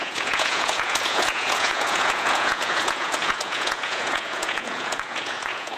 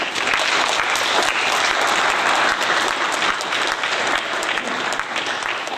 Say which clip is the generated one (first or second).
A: first